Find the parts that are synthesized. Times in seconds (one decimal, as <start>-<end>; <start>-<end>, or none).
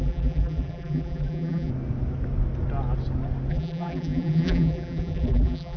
0.0-1.7; 3.5-5.8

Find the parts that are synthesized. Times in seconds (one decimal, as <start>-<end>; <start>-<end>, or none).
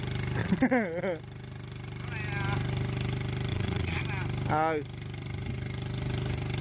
0.4-1.0; 3.5-4.0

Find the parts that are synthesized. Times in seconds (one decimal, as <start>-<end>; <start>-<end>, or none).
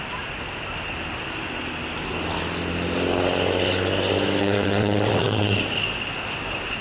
4.4-5.6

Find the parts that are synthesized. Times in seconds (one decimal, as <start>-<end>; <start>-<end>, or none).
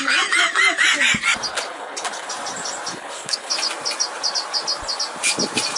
1.5-2.3; 2.9-3.5